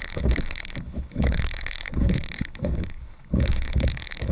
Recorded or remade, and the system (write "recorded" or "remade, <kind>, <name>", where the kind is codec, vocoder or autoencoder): remade, codec, HILCodec